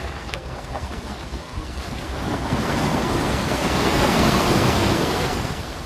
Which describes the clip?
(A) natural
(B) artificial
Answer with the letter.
B